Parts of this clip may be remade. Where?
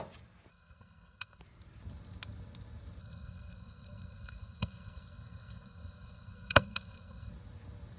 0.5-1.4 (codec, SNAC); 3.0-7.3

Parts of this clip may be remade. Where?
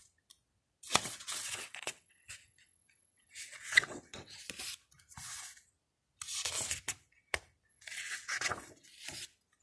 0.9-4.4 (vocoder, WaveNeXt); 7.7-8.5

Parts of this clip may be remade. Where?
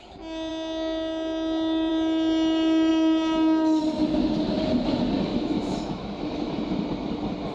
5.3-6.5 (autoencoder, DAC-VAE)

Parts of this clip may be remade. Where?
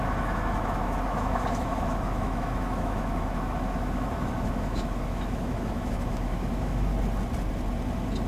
0.0-6.9 (autoencoder, DAC-VAE)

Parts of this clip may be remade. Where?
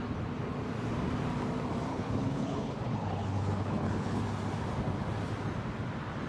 1.9-4.2 (codec, HILCodec)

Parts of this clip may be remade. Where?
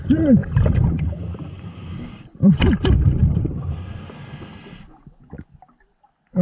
0.4-2.5 (vocoder, BigVGAN v2)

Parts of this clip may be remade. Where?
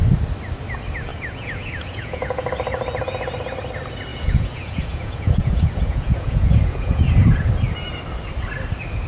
1.1-2.5 (vocoder, Vocos); 4.1-7.5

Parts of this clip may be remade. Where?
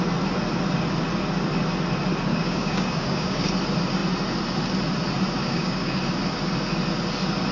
2.3-3.5 (codec, DAC); 5.4-6.0